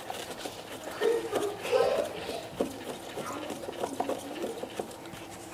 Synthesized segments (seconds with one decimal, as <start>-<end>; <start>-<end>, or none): none